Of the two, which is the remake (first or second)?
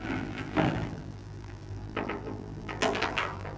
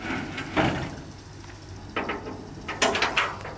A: first